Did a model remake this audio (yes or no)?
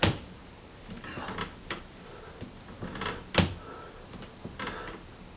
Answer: no